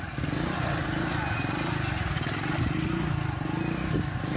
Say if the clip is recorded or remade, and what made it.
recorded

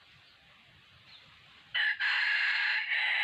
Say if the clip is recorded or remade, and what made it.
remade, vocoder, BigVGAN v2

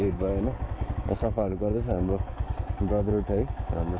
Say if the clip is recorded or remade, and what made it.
remade, codec, DAC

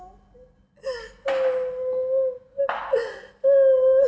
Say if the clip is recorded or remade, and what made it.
recorded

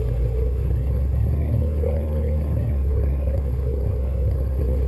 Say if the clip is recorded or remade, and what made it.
remade, codec, SNAC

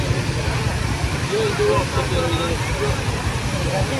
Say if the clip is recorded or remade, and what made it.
recorded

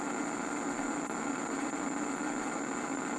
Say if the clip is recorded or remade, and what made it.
recorded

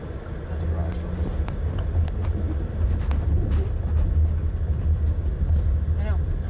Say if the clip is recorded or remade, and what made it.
recorded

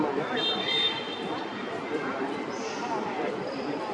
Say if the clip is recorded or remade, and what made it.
remade, vocoder, BigVGAN v2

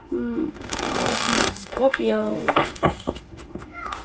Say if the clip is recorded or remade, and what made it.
remade, autoencoder, DAC-VAE